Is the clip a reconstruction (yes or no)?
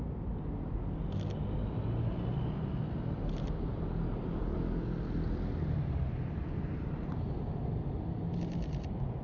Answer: no